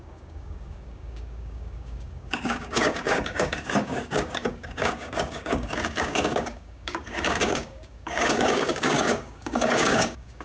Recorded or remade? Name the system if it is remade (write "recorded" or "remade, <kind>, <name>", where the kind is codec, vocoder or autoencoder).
remade, codec, DAC